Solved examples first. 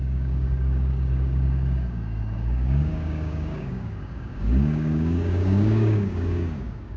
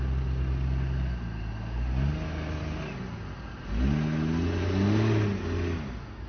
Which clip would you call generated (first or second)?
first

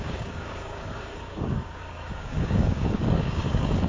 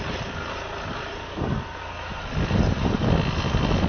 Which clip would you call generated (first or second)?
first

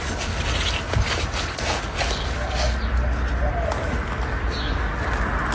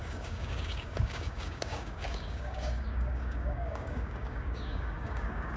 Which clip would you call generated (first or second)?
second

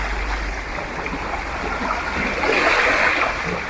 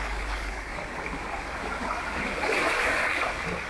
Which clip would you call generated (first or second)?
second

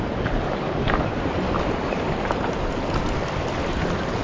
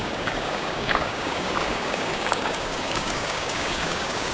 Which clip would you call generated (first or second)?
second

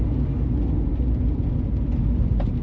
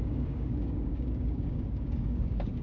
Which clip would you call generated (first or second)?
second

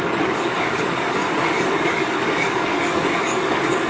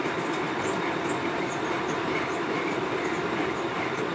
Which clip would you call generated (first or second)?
first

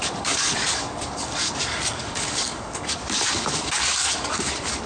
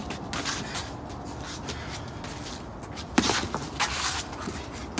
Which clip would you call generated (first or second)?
first